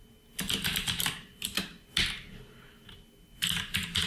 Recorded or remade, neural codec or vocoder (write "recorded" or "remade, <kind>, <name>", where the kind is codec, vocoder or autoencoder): recorded